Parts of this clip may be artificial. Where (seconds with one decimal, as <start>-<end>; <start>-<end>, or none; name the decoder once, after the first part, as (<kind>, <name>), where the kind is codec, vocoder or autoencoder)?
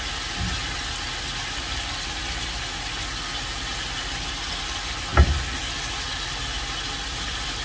none